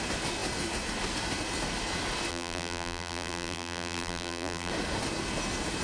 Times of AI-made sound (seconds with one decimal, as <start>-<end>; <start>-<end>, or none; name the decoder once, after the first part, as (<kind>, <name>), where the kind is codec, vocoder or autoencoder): 2.3-4.7 (vocoder, BigVGAN v2)